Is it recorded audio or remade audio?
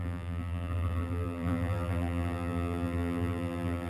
remade